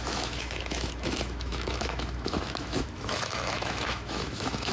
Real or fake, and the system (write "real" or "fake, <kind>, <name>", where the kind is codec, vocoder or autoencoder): fake, autoencoder, DAC-VAE